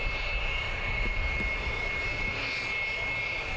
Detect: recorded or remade recorded